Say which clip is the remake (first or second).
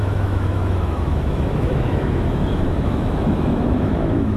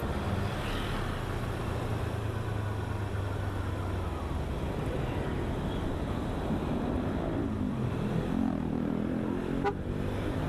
first